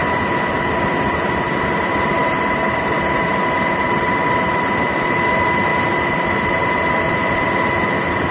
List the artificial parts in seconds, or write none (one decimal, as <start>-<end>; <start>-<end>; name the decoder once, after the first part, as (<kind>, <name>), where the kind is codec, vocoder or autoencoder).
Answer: none